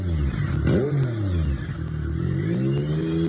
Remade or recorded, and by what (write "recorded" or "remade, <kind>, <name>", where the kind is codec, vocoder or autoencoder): recorded